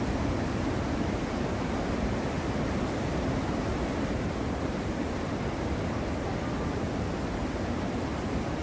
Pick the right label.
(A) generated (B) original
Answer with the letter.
B